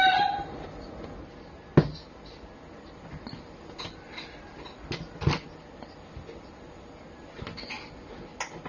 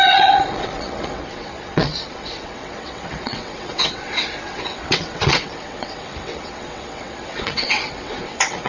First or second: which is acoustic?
first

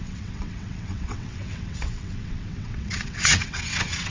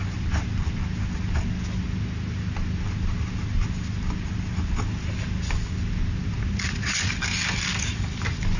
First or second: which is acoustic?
second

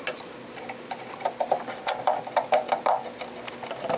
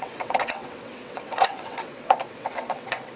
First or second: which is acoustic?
first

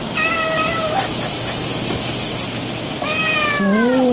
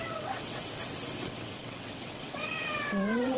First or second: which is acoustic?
first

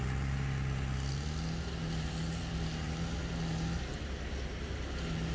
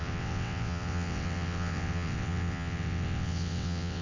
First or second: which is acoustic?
first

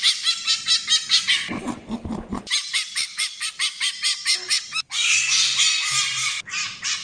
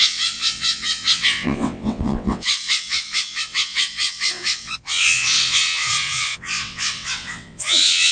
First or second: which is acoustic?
first